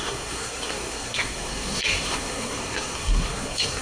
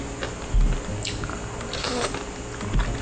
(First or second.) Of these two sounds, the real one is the second